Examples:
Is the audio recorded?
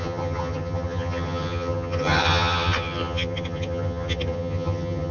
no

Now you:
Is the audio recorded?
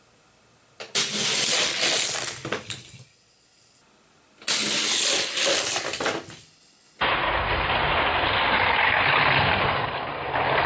yes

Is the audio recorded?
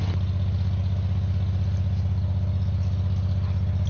yes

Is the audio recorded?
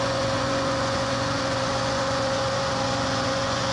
no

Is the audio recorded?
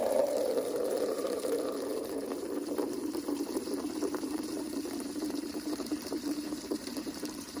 no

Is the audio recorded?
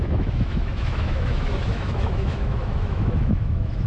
no